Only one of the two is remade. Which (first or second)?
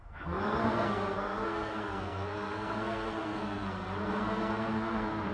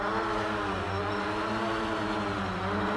first